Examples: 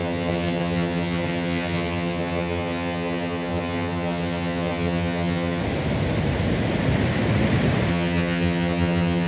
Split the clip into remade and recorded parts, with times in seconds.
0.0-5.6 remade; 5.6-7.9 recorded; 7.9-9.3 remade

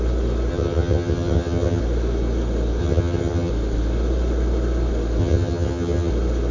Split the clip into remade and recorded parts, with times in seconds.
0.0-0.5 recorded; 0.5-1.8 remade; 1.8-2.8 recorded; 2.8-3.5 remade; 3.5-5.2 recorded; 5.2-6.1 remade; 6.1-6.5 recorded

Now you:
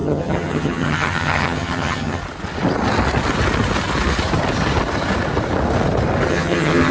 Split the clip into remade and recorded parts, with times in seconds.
0.0-2.2 remade; 2.2-6.3 recorded; 6.3-6.9 remade

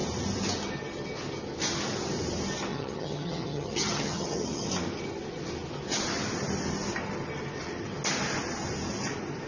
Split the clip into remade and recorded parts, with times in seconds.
0.0-2.7 recorded; 2.7-4.7 remade; 4.7-9.5 recorded

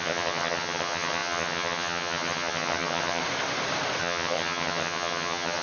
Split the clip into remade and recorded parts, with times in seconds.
0.0-3.2 remade; 3.2-4.0 recorded; 4.0-5.6 remade

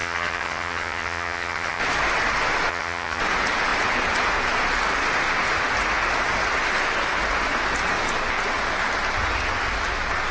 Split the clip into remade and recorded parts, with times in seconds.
0.0-1.8 remade; 1.8-2.7 recorded; 2.7-3.2 remade; 3.2-10.3 recorded

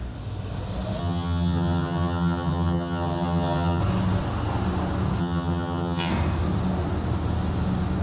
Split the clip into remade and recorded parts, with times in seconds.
0.0-1.0 recorded; 1.0-3.8 remade; 3.8-5.2 recorded; 5.2-6.1 remade; 6.1-8.0 recorded